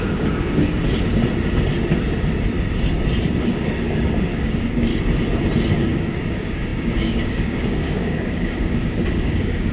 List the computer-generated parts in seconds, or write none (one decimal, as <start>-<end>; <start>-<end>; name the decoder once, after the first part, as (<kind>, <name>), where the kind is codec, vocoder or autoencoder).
0.0-0.6 (codec, DAC); 3.4-4.9; 5.7-9.7